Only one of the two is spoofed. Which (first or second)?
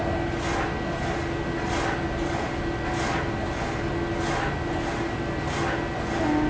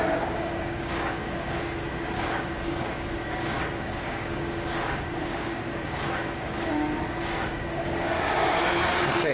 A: second